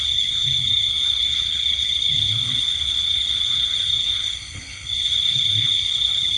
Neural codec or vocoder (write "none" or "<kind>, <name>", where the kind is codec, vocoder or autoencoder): codec, HILCodec